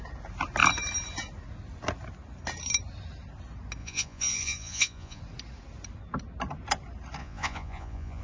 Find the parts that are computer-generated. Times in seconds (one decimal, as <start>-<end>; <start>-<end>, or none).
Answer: 3.8-5.2; 7.2-8.2